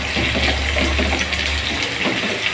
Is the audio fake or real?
real